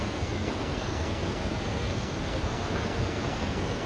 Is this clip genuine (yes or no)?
no